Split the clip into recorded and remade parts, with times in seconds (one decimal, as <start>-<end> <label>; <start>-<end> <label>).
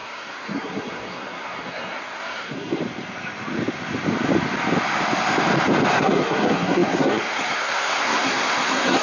0.0-2.8 remade; 2.8-5.9 recorded; 5.9-9.0 remade